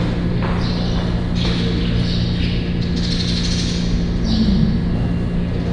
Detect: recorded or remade recorded